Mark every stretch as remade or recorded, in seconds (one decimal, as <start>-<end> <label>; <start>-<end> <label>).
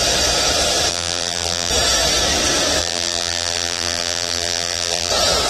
0.0-0.9 recorded; 0.9-1.7 remade; 1.7-2.8 recorded; 2.8-5.1 remade; 5.1-5.5 recorded